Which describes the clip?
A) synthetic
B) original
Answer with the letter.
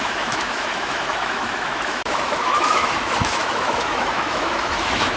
A